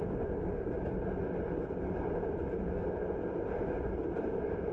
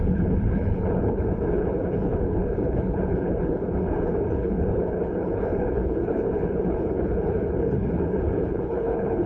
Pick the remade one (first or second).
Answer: second